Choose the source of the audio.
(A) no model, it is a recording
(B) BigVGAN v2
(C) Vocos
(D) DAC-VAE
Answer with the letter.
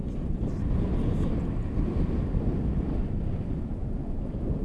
B